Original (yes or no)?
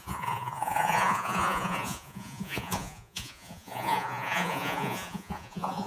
no